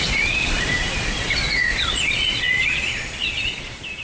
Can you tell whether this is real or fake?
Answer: fake